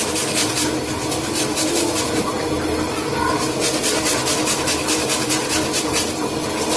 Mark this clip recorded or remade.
recorded